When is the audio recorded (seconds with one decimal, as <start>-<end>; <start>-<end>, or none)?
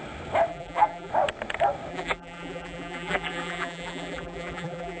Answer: 0.0-0.5; 1.1-1.9